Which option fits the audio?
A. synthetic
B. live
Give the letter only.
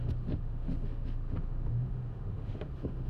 A